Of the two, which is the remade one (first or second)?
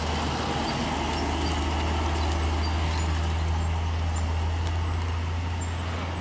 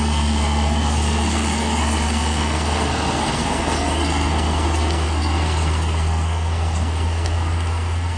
second